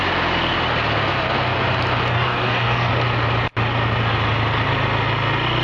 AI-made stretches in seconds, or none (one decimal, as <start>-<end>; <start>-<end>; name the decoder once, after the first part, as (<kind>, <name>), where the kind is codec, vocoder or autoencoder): 2.1-2.9 (codec, DAC)